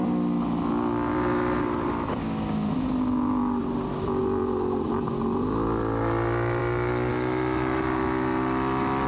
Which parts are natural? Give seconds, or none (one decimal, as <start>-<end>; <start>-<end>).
0.0-1.1; 1.6-4.2; 5.1-9.1